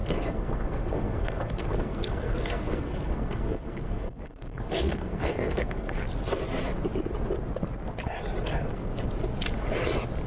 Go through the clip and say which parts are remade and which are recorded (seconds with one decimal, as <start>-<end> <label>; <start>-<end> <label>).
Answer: 0.0-6.0 remade; 6.0-8.4 recorded; 8.4-8.9 remade; 8.9-10.3 recorded